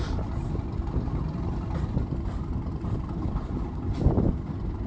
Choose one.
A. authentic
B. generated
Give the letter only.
A